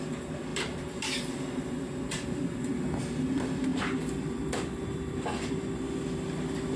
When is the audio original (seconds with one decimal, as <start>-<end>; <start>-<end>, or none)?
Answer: 3.7-5.1